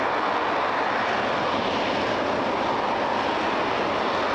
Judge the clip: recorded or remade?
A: recorded